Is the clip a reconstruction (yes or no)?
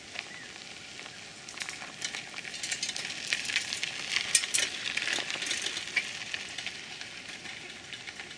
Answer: no